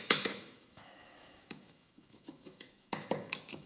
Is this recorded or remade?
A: remade